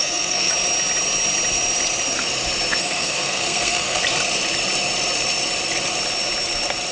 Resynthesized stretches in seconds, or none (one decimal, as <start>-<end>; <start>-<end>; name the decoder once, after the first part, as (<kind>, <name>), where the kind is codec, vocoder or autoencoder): 0.0-0.5 (codec, SNAC); 2.8-4.0